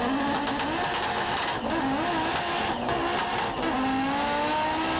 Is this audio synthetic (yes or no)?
no